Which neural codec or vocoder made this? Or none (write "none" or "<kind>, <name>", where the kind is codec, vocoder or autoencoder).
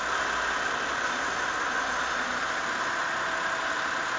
none